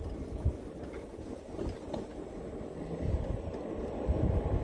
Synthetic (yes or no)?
no